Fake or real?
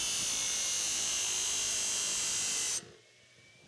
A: fake